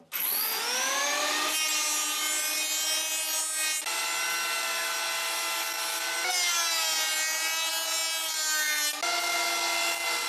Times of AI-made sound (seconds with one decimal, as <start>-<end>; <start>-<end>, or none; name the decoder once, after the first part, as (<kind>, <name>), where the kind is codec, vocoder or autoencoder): none